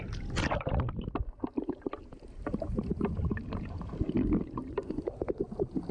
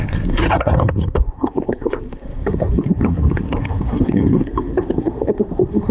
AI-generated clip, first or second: second